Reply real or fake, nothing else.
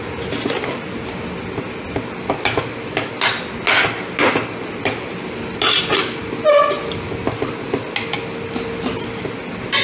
real